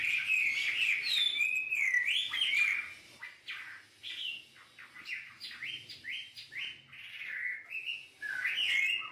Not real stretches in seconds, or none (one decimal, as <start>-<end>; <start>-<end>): none